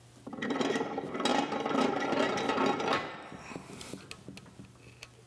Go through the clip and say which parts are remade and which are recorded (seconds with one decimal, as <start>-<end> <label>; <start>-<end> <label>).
0.0-2.5 recorded; 2.5-3.9 remade; 3.9-5.3 recorded